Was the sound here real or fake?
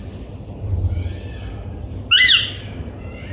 real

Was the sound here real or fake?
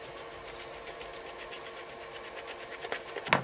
real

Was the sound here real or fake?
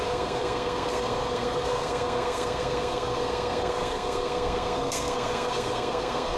fake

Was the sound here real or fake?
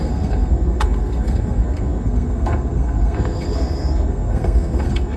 fake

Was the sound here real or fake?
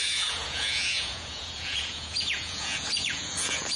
fake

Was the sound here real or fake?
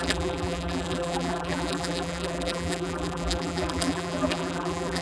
fake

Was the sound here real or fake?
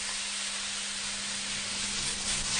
real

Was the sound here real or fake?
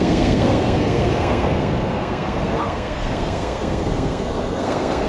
fake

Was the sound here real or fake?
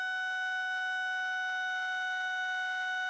real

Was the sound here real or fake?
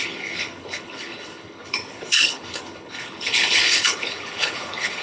fake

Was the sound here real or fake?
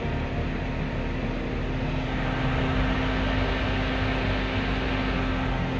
real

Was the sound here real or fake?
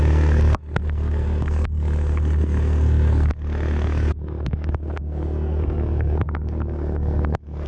fake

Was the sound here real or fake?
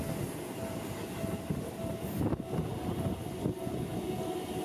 real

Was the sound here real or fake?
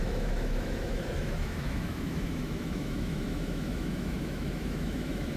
fake